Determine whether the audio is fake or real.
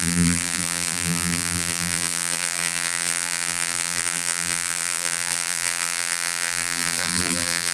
fake